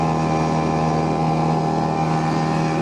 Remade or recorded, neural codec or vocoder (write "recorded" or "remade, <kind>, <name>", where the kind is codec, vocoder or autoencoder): recorded